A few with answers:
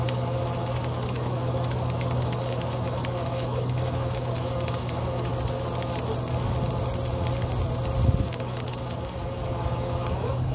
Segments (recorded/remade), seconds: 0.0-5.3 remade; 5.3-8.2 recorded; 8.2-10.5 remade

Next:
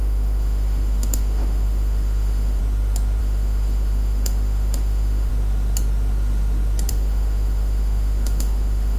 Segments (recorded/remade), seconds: 0.0-2.6 remade; 2.6-3.2 recorded; 3.2-5.3 remade; 5.3-6.9 recorded; 6.9-9.0 remade

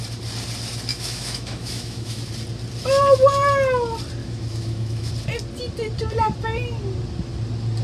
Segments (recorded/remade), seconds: 0.0-0.9 recorded; 0.9-2.3 remade; 2.3-4.2 recorded; 4.2-5.1 remade; 5.1-7.8 recorded